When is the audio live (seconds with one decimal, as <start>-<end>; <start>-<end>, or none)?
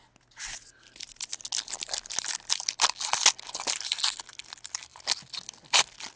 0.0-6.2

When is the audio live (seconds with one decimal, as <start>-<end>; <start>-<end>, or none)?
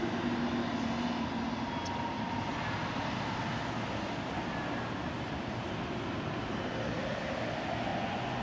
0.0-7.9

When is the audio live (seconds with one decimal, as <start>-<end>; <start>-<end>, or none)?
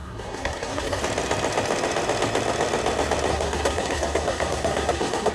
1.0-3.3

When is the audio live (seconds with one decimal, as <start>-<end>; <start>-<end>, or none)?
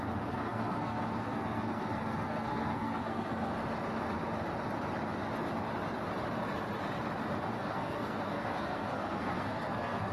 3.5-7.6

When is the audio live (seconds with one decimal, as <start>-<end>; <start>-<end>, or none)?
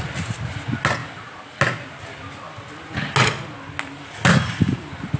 0.0-5.2